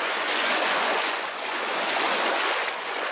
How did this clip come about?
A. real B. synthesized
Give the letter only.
B